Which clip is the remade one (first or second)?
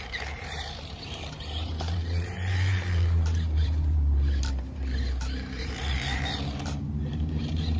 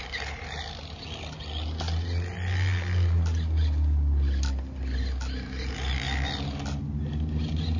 first